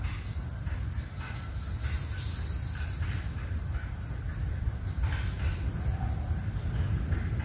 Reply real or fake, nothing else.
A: real